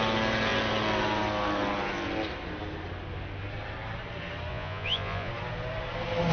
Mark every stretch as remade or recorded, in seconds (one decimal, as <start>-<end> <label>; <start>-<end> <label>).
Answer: 0.0-4.5 recorded; 4.5-5.3 remade; 5.3-6.3 recorded